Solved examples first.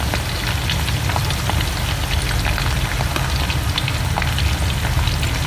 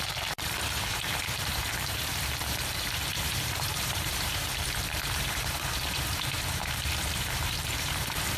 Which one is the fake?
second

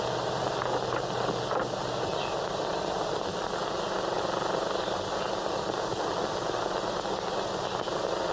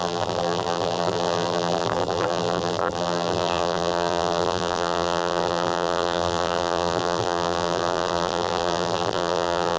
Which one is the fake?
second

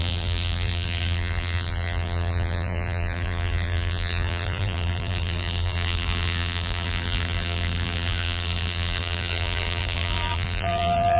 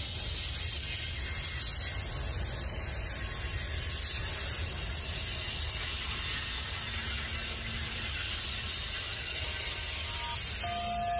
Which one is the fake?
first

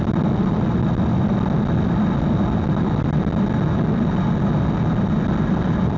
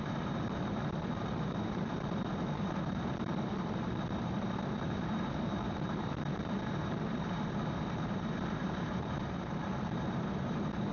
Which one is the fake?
second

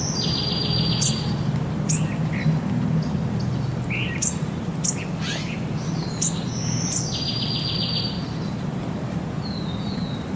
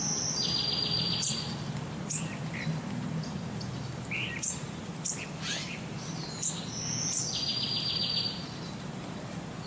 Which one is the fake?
second